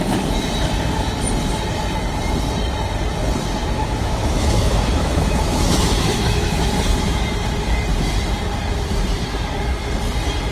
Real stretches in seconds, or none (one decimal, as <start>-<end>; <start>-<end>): 0.0-3.8; 6.7-10.5